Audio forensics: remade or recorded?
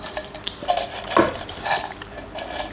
remade